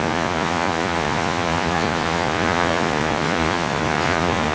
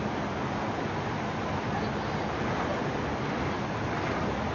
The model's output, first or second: first